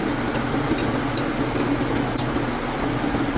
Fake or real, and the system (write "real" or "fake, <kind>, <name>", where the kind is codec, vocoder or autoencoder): real